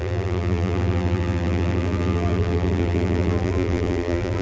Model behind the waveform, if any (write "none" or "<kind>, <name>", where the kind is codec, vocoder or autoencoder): vocoder, BigVGAN v2